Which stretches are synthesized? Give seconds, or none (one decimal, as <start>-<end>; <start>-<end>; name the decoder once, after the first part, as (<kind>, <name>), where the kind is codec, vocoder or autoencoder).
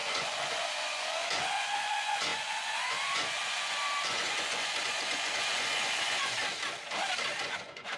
0.0-6.4 (vocoder, Vocos); 7.4-8.0